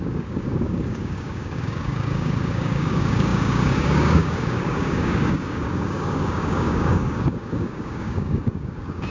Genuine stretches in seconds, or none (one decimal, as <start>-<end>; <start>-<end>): none